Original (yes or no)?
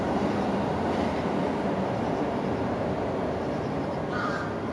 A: yes